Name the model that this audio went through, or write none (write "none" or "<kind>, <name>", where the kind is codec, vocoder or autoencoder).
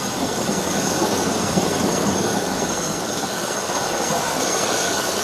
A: codec, SNAC